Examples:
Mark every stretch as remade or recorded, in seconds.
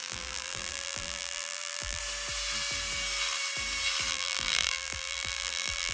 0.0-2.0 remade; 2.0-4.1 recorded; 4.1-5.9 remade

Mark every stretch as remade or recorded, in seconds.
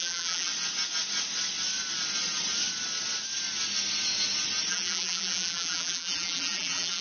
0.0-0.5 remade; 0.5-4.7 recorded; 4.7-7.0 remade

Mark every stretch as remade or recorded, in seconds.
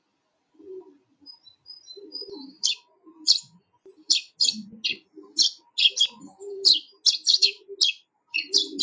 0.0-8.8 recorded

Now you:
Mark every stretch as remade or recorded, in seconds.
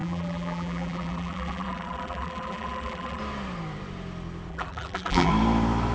0.0-3.2 remade; 3.2-4.5 recorded; 4.5-5.3 remade; 5.3-5.9 recorded